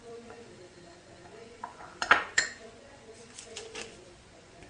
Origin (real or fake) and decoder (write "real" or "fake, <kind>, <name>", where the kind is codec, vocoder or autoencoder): fake, vocoder, Vocos